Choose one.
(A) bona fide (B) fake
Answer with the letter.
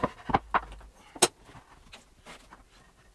A